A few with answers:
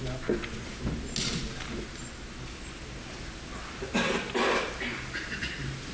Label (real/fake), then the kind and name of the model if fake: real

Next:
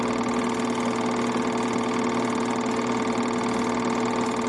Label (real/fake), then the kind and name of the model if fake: real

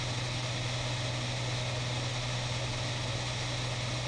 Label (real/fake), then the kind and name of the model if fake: real